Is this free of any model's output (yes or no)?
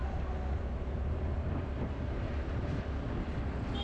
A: yes